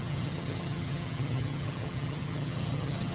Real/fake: fake